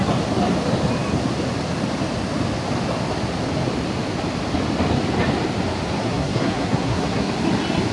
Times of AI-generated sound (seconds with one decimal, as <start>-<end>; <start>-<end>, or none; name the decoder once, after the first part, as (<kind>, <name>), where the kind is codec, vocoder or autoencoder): 6.0-7.3 (codec, SNAC)